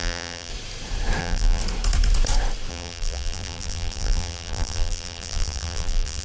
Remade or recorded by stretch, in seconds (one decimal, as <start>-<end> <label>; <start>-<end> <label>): 0.0-0.5 remade; 0.5-1.2 recorded; 1.2-1.6 remade; 1.6-2.7 recorded; 2.7-6.2 remade